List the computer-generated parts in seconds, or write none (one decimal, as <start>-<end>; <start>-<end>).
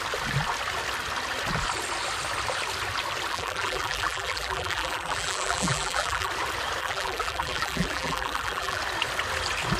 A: 3.3-6.3; 6.8-8.8